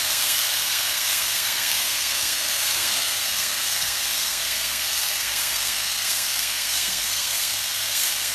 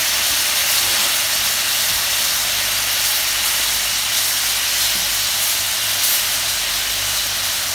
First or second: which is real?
second